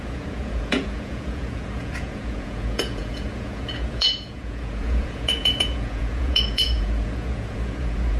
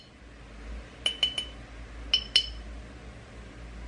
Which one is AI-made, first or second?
first